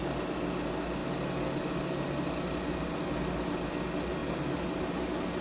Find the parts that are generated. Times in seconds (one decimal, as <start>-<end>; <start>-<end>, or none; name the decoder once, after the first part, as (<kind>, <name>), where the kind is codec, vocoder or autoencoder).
none